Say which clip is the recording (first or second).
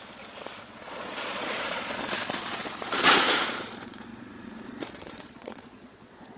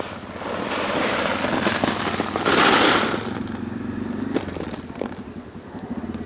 second